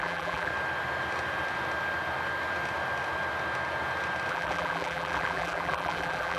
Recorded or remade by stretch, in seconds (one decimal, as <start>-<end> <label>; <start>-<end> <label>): 0.0-0.5 remade; 0.5-4.3 recorded; 4.3-6.4 remade